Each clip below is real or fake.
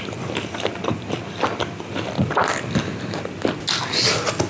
real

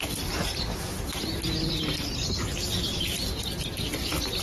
real